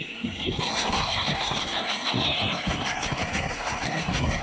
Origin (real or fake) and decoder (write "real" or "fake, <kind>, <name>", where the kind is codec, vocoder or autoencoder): fake, codec, SNAC